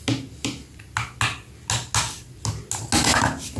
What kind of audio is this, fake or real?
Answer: real